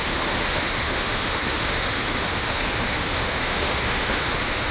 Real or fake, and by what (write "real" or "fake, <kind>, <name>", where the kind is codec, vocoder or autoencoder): fake, autoencoder, DAC-VAE